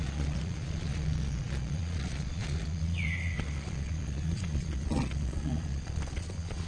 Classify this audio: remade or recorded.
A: remade